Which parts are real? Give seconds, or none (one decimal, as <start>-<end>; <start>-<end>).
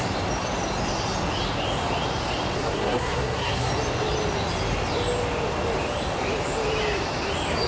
0.0-2.6; 3.7-7.7